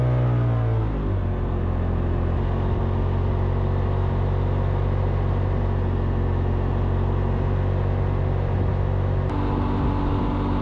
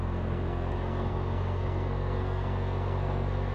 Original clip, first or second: first